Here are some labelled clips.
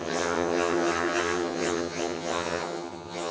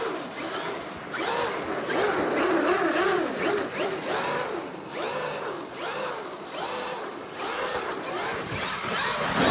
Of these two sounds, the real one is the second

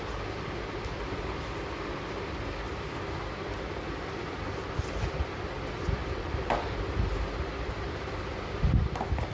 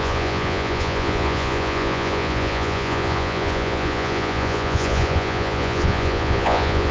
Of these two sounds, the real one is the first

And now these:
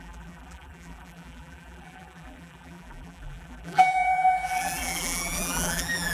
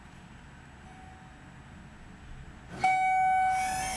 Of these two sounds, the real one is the second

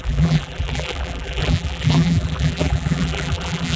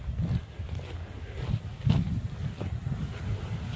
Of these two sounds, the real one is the second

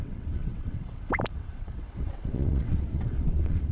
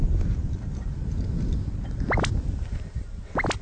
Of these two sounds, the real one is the second